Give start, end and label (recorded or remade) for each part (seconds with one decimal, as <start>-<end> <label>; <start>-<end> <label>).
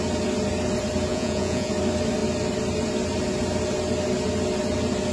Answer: 0.0-1.1 recorded; 1.1-1.7 remade; 1.7-5.1 recorded